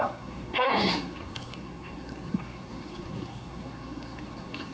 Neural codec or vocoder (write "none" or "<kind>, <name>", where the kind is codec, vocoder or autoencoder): codec, SNAC